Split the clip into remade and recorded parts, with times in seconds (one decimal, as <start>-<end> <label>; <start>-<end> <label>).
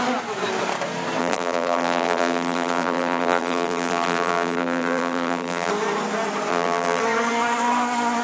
0.0-1.2 recorded; 1.2-5.7 remade; 5.7-6.5 recorded; 6.5-7.0 remade; 7.0-8.2 recorded